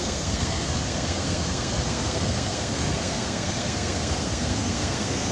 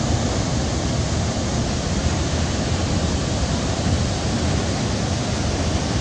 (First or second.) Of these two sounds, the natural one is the second